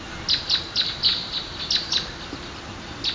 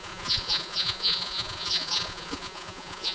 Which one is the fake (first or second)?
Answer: second